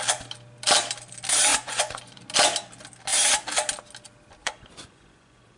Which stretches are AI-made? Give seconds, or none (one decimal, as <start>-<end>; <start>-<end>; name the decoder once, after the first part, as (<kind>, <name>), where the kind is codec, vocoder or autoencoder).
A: 1.5-2.2 (vocoder, Vocos); 4.4-5.6